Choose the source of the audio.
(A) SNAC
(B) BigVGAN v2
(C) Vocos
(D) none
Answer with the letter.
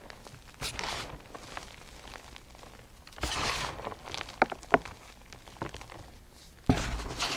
D